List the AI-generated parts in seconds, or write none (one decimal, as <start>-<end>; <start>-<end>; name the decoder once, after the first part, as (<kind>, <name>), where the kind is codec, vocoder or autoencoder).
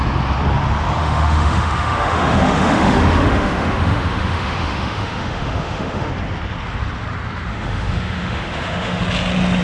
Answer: 1.0-6.1 (autoencoder, DAC-VAE); 7.5-9.0